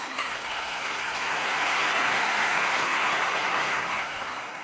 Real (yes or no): no